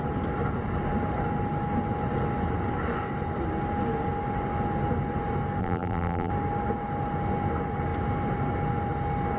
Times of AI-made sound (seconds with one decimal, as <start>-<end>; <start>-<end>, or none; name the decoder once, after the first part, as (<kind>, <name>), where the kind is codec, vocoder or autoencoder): 5.6-6.3 (vocoder, BigVGAN v2)